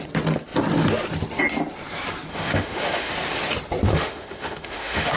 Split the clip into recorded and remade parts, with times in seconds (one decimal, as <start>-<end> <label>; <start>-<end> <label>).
0.0-2.3 recorded; 2.3-3.1 remade; 3.1-3.9 recorded; 3.9-5.2 remade